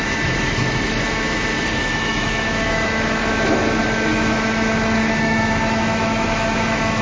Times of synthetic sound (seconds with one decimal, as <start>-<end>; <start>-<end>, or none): 0.0-7.0